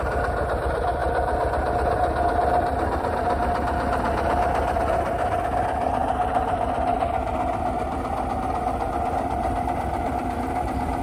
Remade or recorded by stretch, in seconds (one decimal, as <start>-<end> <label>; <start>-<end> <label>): 0.0-11.0 remade